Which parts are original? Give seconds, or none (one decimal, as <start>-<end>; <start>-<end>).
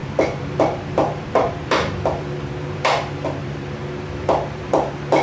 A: none